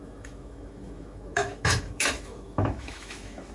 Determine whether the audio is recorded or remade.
remade